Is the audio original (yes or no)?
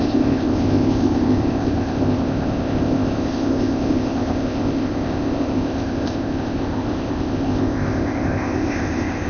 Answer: no